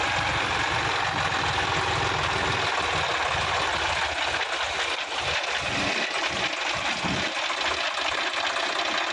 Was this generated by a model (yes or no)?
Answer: no